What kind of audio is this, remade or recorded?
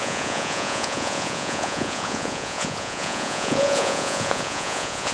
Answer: remade